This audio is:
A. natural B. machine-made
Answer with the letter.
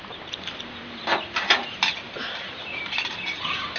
B